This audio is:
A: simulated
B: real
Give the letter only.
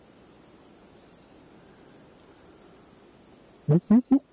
B